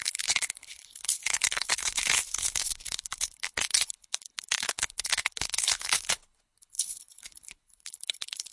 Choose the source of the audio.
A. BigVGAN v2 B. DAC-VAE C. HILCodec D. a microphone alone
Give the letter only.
C